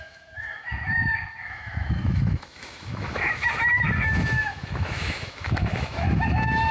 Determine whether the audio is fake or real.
fake